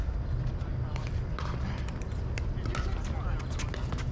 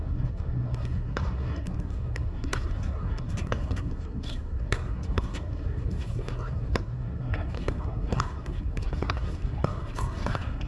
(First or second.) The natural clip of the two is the first